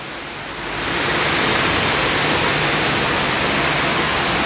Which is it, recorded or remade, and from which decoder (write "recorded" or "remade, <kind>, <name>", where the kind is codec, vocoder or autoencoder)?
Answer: recorded